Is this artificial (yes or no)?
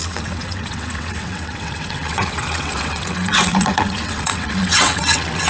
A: yes